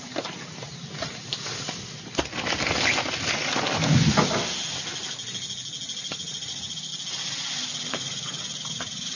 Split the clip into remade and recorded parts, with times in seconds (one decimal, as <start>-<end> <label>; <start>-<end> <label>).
0.0-1.3 remade; 1.3-6.1 recorded; 6.1-6.9 remade; 6.9-7.9 recorded; 7.9-9.2 remade